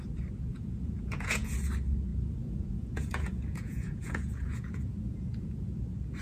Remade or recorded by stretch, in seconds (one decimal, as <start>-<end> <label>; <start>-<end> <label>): 0.0-0.5 recorded; 0.5-1.5 remade; 1.5-2.1 recorded; 2.1-5.8 remade; 5.8-6.2 recorded